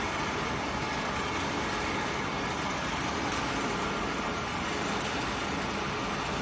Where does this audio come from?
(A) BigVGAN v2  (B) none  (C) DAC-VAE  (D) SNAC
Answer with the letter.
B